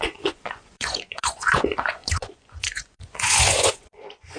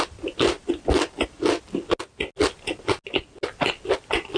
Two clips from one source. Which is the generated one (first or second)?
first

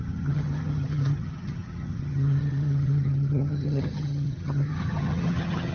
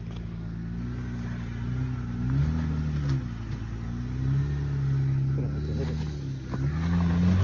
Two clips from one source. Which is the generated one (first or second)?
first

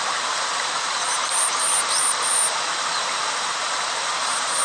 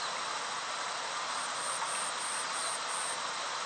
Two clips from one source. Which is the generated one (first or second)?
first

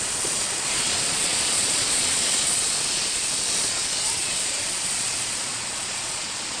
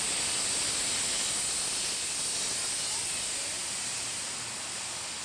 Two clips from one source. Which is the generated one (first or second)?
first